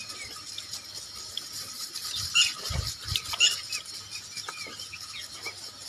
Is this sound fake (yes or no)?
no